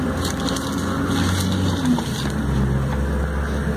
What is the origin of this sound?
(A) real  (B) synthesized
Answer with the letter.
A